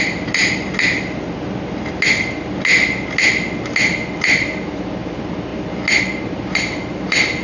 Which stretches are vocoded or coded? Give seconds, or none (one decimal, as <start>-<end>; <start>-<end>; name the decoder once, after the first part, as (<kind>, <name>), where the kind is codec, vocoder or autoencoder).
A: none